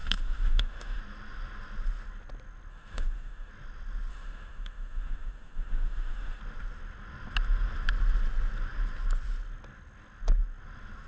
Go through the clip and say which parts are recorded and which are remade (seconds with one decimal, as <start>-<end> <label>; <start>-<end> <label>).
0.0-1.0 remade; 1.0-2.7 recorded; 2.7-3.5 remade; 3.5-4.1 recorded; 4.1-6.4 remade; 6.4-11.1 recorded